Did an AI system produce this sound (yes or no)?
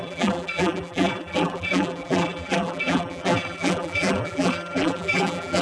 yes